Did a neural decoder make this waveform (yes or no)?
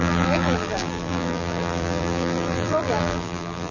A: yes